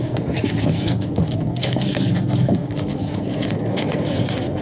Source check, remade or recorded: remade